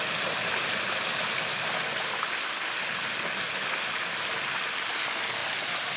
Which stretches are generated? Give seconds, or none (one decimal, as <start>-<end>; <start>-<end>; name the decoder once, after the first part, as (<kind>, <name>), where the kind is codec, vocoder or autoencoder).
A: none